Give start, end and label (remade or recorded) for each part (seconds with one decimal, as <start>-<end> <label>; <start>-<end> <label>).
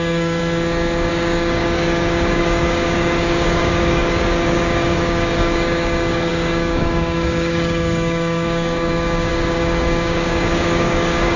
0.0-0.4 remade; 0.4-1.1 recorded; 1.1-11.4 remade